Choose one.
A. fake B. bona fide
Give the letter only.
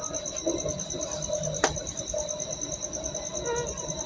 B